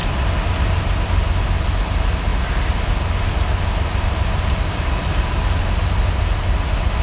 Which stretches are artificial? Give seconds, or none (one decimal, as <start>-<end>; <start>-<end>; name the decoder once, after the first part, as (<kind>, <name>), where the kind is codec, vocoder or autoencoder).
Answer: none